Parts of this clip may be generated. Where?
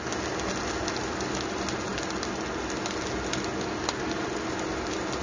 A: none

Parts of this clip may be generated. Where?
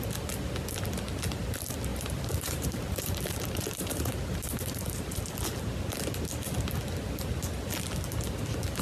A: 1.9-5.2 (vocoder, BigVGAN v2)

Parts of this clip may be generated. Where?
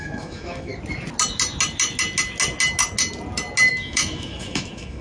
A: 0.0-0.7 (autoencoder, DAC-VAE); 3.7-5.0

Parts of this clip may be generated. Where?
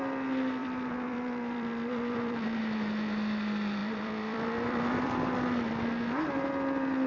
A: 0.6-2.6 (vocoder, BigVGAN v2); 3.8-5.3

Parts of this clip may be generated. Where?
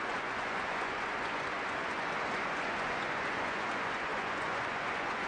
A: 0.0-5.3 (vocoder, Vocos)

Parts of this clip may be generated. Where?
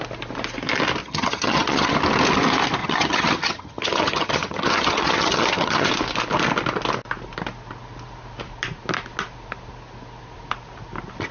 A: 1.0-1.9 (vocoder, HiFi-GAN); 2.8-5.9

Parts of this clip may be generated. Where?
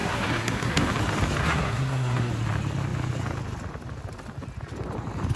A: 0.0-0.9 (codec, SNAC); 1.4-2.3